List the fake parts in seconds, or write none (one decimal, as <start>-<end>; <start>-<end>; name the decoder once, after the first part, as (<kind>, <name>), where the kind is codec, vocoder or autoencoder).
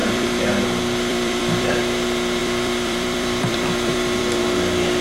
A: 0.0-0.6 (vocoder, BigVGAN v2); 1.1-1.8; 2.4-4.4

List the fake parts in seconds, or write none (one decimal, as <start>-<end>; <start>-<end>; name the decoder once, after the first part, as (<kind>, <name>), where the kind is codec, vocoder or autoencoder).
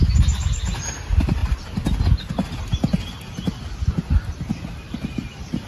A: none